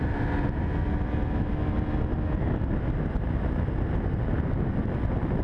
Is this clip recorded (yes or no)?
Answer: yes